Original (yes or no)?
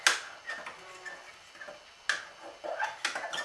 yes